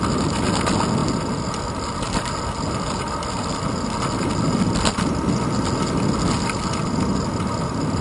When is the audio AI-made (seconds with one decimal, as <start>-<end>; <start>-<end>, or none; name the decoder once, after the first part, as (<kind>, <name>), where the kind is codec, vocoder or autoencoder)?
none